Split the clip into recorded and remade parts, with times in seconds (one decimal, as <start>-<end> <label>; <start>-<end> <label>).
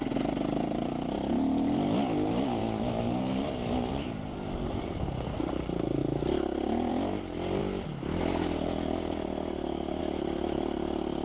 0.0-11.2 recorded